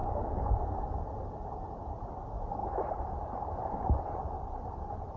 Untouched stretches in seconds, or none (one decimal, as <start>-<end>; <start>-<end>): 0.0-5.2